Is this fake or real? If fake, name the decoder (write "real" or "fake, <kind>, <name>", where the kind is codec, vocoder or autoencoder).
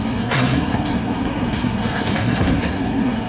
fake, codec, SNAC